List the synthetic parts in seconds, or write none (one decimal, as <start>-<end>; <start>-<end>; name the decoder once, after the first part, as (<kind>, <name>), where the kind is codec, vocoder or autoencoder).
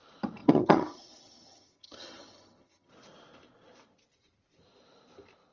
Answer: 0.4-2.9 (vocoder, HiFi-GAN)